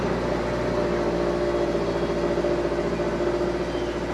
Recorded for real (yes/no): yes